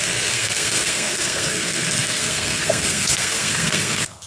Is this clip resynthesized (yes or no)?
yes